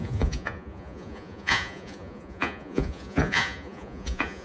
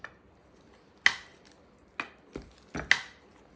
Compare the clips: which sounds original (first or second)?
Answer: second